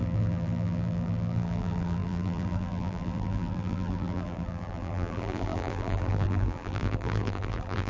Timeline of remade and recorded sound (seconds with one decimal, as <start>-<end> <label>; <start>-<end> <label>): 0.0-7.9 remade